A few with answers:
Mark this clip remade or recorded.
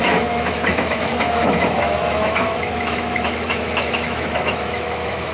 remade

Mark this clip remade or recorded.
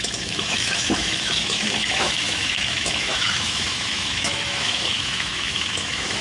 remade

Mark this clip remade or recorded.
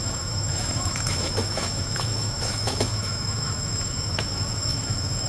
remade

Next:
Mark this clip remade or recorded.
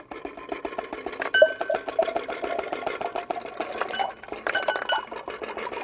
recorded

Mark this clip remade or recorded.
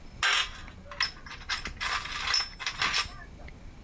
recorded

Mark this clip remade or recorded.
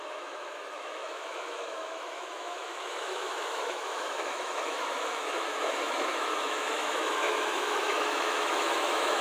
remade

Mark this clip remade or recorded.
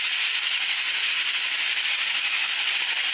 recorded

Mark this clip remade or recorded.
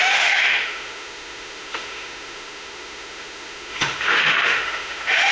remade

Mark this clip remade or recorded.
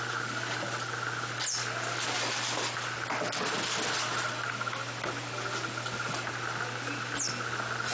recorded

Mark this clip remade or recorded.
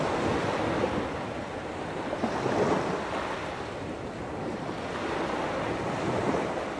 recorded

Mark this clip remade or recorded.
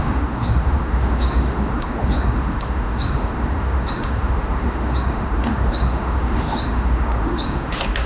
remade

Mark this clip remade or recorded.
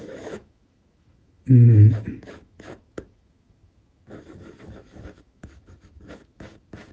remade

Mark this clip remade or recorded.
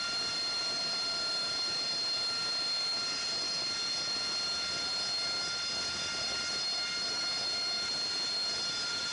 recorded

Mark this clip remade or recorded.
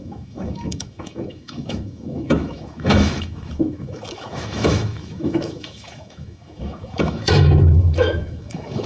remade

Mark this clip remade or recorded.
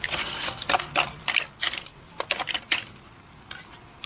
recorded